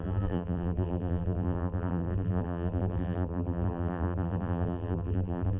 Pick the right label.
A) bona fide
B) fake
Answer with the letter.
B